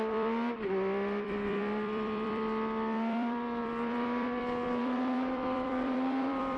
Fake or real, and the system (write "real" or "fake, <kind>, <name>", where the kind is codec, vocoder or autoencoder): fake, vocoder, BigVGAN v2